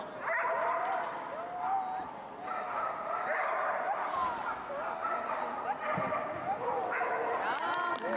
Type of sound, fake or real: real